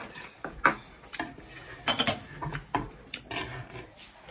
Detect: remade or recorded recorded